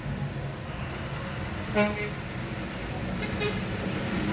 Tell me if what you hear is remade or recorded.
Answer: recorded